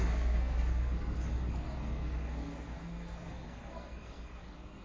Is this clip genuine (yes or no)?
no